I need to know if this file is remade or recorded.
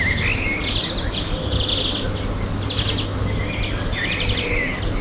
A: recorded